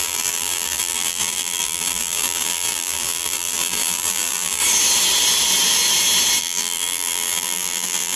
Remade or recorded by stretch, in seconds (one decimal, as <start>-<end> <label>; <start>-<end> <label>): 0.0-4.6 remade; 4.6-6.4 recorded; 6.4-8.2 remade